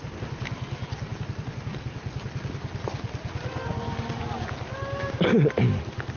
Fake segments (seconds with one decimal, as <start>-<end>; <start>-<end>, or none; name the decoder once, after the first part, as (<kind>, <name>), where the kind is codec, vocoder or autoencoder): 5.3-5.8 (vocoder, BigVGAN v2)